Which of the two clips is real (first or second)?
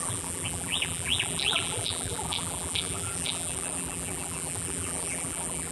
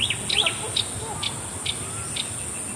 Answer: second